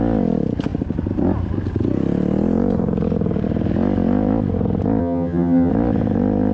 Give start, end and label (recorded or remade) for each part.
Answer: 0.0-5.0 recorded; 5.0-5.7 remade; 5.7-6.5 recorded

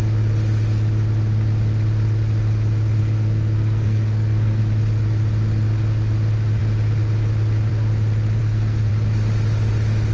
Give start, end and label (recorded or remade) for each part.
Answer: 0.0-3.0 recorded; 3.0-4.6 remade; 4.6-8.4 recorded; 8.4-8.9 remade; 8.9-10.1 recorded

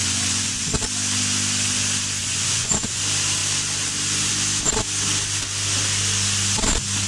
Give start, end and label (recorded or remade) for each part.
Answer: 0.0-0.7 remade; 0.7-2.2 recorded; 2.2-3.0 remade; 3.0-7.1 recorded

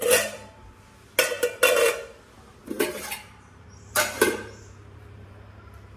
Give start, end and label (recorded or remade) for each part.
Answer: 0.0-0.6 remade; 0.6-2.6 recorded; 2.6-5.3 remade; 5.3-6.0 recorded